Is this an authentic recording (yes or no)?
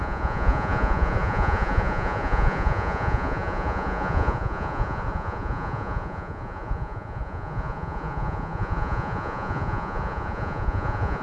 no